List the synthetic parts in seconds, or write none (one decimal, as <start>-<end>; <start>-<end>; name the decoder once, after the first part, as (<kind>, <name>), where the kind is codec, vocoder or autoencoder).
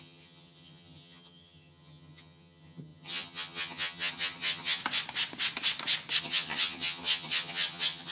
0.0-4.8 (vocoder, HiFi-GAN); 6.2-8.1